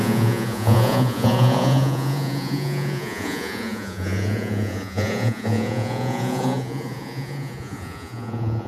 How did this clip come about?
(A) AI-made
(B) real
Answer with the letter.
A